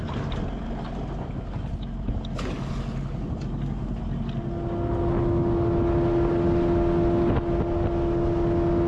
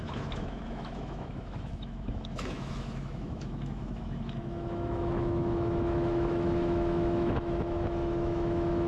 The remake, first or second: second